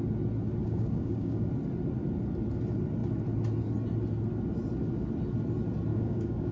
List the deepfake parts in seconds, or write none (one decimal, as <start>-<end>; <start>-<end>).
0.6-1.5; 5.9-6.5